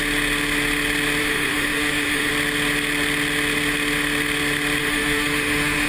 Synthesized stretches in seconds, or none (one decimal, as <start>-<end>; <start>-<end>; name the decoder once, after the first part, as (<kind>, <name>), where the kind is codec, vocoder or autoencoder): 1.2-2.3 (autoencoder, DAC-VAE); 4.8-5.9